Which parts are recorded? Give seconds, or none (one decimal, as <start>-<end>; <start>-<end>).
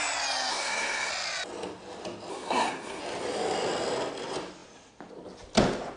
0.0-0.5; 1.1-2.3; 3.0-6.0